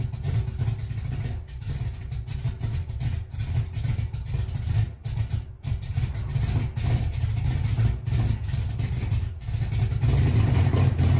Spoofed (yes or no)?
no